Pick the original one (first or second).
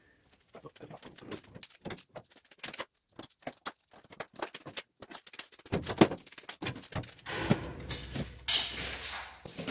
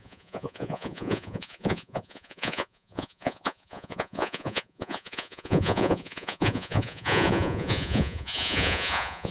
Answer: first